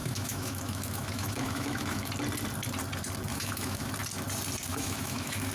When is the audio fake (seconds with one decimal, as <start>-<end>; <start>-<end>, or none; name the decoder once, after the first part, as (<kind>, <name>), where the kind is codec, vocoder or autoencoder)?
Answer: 0.0-2.1 (autoencoder, DAC-VAE); 3.3-3.9; 4.7-5.5